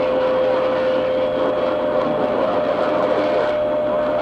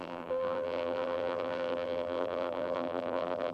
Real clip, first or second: first